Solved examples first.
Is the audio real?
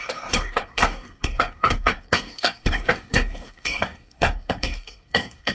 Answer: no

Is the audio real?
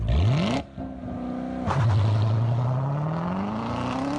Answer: yes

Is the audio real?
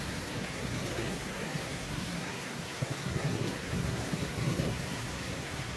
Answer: no